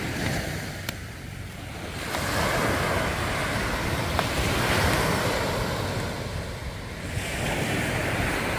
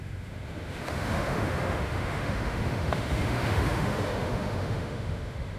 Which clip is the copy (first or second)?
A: second